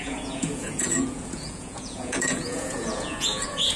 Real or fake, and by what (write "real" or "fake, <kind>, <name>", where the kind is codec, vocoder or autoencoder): fake, vocoder, Vocos